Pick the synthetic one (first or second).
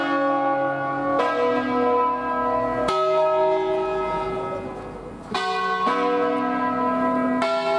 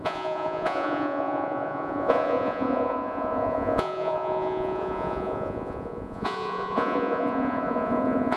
second